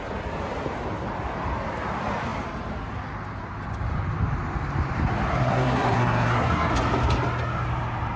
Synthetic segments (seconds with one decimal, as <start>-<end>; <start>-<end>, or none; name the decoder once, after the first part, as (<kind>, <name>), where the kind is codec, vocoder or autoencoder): 5.3-6.7 (codec, SNAC)